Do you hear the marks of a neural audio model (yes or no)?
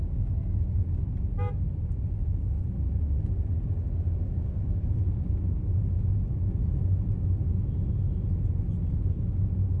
no